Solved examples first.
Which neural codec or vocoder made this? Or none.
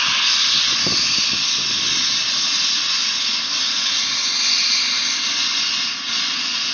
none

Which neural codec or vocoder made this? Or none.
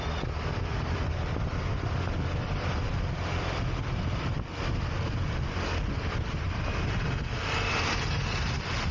none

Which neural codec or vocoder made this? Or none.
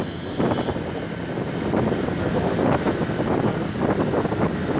none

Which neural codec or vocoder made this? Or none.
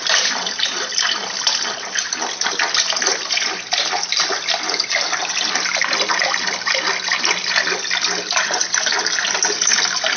none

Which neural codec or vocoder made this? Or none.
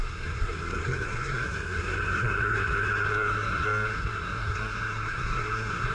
codec, SNAC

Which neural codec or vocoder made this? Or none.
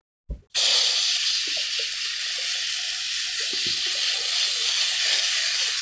none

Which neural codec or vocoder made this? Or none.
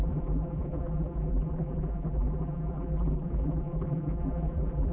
vocoder, BigVGAN v2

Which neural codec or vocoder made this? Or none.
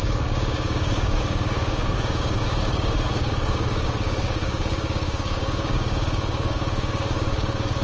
codec, DAC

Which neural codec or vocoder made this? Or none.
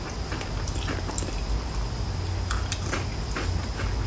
none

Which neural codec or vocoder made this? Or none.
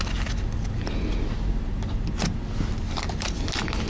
none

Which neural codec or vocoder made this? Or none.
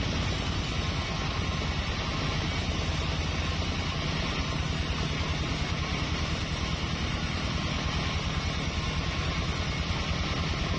none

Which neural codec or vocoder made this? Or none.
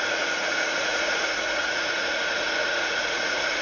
vocoder, Vocos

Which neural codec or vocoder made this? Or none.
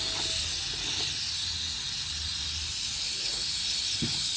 none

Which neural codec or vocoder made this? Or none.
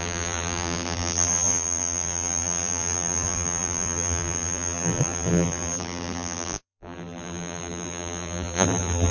vocoder, BigVGAN v2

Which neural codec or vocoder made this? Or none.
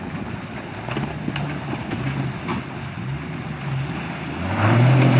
none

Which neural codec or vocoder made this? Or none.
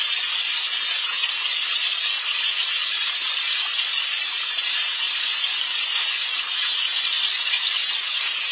vocoder, BigVGAN v2